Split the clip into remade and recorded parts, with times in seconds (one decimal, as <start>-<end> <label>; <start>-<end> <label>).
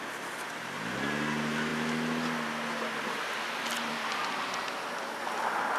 0.0-5.8 recorded